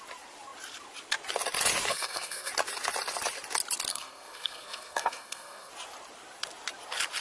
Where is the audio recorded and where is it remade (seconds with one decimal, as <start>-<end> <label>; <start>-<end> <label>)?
0.0-1.9 recorded; 1.9-2.5 remade; 2.5-3.9 recorded; 3.9-5.7 remade; 5.7-7.2 recorded